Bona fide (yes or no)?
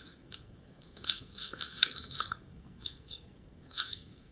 no